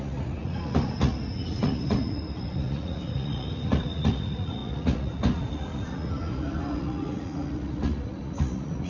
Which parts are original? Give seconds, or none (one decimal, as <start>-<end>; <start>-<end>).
none